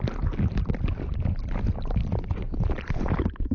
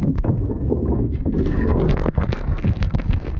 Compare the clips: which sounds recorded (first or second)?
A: first